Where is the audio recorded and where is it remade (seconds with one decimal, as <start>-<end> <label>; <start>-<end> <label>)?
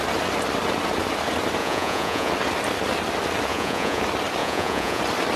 0.0-1.6 recorded; 1.6-2.3 remade; 2.3-3.5 recorded; 3.5-4.0 remade; 4.0-4.4 recorded; 4.4-5.0 remade; 5.0-5.4 recorded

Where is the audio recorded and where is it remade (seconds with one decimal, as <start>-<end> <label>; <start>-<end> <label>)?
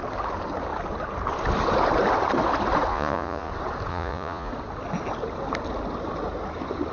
0.0-2.9 recorded; 2.9-3.5 remade; 3.5-3.9 recorded; 3.9-4.5 remade; 4.5-6.9 recorded